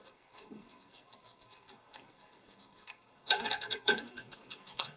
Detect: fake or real fake